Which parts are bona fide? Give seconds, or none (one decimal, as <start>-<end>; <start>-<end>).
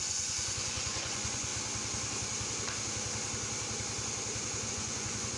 1.5-4.7